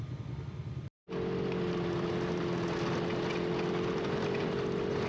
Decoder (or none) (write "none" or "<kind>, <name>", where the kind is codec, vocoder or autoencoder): none